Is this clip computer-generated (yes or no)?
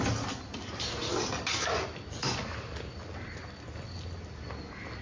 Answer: no